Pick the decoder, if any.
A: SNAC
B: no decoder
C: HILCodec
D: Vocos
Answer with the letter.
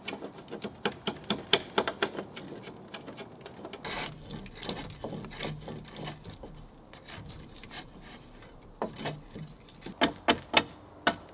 B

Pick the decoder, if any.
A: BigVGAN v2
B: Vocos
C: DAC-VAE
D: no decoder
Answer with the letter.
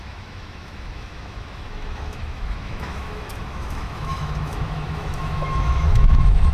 C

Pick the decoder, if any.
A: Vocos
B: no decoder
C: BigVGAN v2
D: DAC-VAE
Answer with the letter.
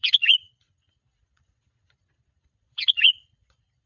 A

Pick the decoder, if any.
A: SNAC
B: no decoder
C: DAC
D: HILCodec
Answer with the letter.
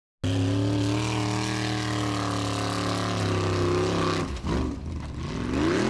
B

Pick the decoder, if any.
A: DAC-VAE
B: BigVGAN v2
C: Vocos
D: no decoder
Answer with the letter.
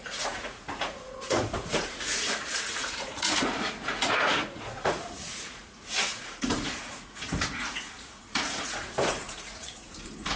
C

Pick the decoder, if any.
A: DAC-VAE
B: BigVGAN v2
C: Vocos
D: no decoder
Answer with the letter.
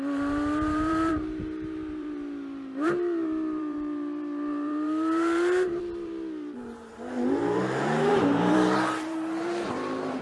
B